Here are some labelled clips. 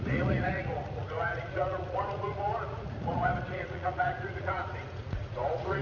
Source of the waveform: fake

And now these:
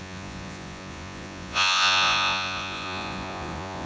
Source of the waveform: fake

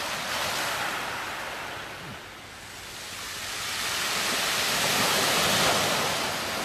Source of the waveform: real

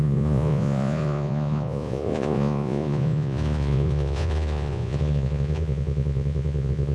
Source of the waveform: fake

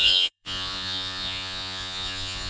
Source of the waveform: fake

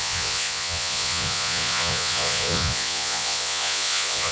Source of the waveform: fake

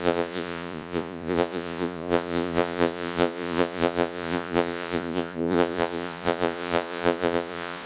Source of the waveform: fake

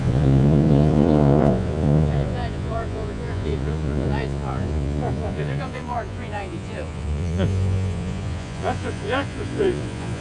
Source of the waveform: fake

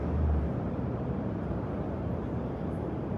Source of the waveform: real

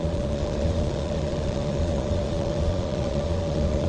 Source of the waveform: fake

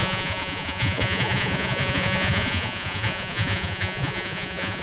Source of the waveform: fake